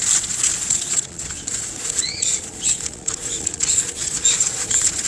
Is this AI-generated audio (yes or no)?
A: yes